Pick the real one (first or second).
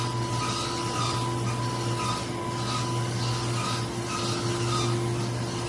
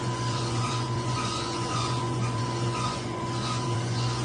first